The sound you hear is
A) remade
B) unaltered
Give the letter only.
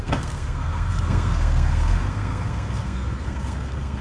A